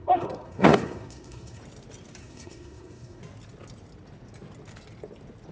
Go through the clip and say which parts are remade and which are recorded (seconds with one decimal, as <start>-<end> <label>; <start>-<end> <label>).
0.0-1.6 remade; 1.6-2.2 recorded; 2.2-3.2 remade; 3.2-5.5 recorded